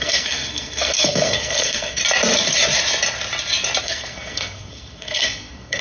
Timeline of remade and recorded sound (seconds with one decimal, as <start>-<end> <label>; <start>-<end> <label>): 0.0-2.0 remade; 2.0-3.8 recorded; 3.8-5.8 remade